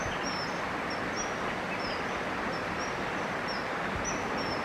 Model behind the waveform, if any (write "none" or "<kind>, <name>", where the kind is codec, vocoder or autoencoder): none